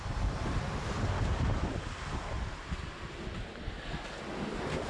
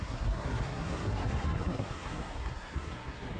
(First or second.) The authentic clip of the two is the first